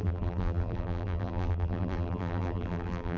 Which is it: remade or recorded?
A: remade